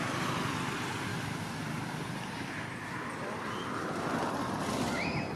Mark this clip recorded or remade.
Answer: recorded